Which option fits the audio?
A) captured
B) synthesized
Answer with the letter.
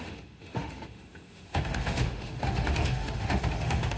B